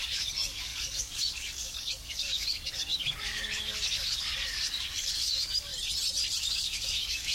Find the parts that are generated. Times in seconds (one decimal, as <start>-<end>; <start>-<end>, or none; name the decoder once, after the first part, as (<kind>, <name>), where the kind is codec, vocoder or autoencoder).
0.0-5.7 (codec, DAC); 6.4-7.3